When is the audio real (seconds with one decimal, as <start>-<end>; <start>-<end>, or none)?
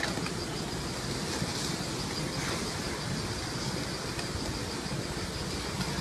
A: 0.0-6.0